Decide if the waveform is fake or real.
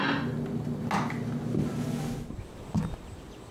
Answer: real